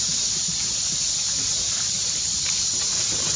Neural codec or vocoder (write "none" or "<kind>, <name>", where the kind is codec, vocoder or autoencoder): none